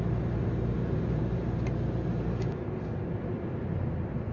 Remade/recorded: recorded